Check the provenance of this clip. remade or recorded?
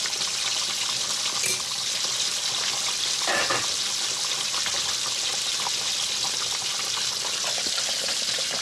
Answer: recorded